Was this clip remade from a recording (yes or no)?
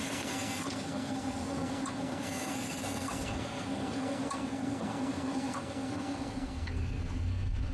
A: yes